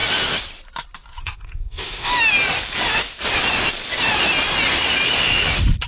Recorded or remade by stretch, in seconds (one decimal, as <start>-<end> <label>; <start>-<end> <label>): 0.0-1.2 recorded; 1.2-2.1 remade; 2.1-5.9 recorded